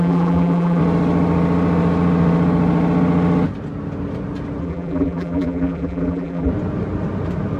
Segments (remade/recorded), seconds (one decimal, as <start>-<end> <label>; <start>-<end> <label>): 0.0-0.8 remade; 0.8-4.6 recorded; 4.6-6.5 remade; 6.5-7.6 recorded